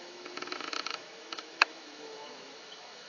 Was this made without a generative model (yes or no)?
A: no